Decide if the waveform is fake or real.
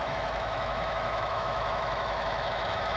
fake